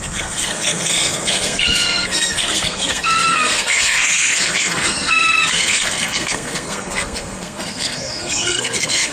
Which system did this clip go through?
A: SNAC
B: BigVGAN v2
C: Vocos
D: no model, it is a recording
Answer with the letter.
A